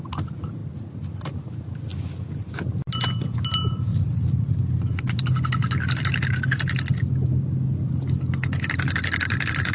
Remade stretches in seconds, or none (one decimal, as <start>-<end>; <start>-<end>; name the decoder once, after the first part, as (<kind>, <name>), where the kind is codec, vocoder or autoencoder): 3.9-4.6 (vocoder, Vocos)